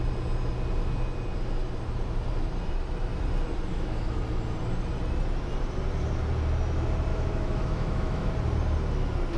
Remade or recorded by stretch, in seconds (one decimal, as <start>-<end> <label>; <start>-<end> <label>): 0.0-3.7 recorded; 3.7-4.2 remade; 4.2-7.1 recorded; 7.1-8.3 remade; 8.3-9.4 recorded